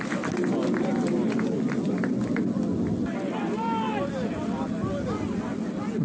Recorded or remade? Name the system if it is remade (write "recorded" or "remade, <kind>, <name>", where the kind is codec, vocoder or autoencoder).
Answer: recorded